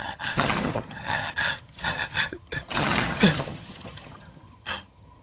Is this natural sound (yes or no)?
no